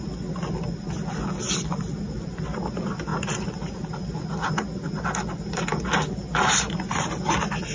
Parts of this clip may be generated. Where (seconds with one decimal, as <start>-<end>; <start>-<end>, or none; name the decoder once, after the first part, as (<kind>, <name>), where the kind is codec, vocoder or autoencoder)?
none